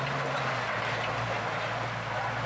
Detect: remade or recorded recorded